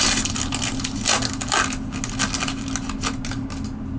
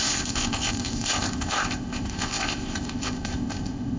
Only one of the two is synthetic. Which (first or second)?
second